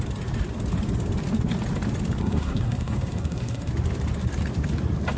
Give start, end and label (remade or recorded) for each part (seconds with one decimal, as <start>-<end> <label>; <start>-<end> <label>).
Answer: 0.0-2.2 recorded; 2.2-3.7 remade; 3.7-5.2 recorded